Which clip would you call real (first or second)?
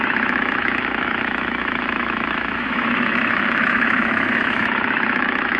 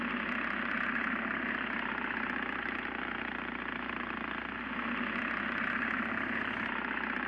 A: second